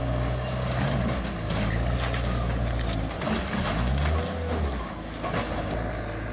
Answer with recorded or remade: recorded